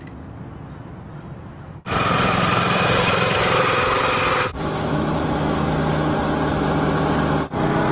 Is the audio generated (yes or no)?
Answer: no